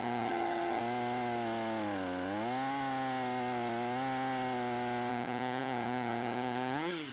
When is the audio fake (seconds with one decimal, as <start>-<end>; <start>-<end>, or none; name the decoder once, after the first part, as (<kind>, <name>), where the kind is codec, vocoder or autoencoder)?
0.0-0.8 (vocoder, HiFi-GAN); 5.1-7.1